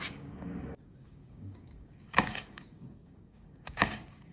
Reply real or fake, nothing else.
fake